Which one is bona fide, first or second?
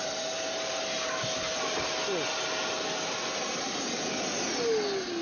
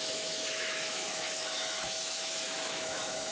first